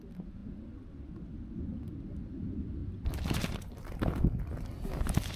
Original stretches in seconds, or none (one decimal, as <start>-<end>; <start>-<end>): 0.0-2.8; 4.2-5.4